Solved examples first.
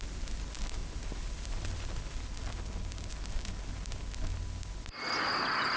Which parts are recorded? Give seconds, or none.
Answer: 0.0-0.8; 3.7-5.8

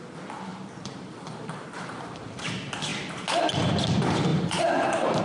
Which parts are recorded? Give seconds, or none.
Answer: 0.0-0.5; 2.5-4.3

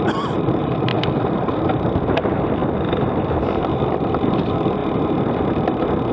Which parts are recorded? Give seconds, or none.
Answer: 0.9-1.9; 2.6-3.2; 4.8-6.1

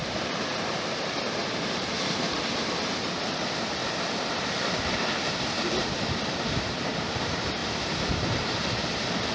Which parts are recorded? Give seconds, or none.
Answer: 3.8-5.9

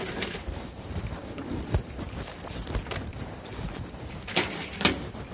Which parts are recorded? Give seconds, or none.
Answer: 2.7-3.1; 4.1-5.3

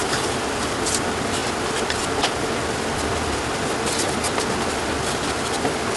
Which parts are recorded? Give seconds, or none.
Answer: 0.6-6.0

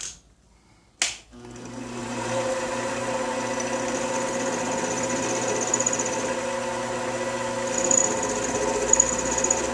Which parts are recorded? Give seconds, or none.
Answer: 0.0-2.0; 3.2-9.7

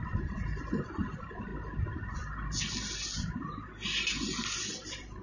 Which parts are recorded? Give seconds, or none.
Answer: 1.5-4.6